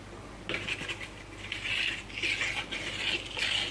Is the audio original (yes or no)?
yes